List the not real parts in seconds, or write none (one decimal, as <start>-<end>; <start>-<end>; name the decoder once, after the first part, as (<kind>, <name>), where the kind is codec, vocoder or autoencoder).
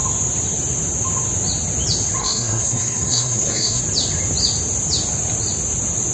2.2-3.8 (codec, SNAC)